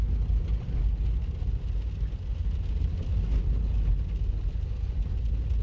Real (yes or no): yes